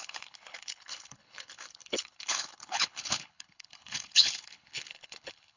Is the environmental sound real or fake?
fake